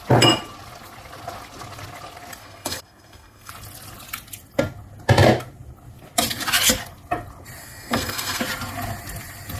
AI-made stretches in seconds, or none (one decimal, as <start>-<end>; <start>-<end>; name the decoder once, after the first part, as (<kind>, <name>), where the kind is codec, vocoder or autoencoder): 2.4-3.5 (codec, SNAC); 7.6-8.4